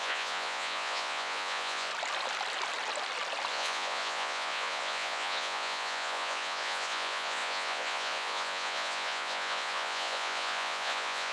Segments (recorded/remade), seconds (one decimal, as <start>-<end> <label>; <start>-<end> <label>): 0.0-1.9 remade; 1.9-3.5 recorded; 3.5-11.3 remade